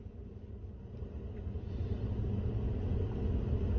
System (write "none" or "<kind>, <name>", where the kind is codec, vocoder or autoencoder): none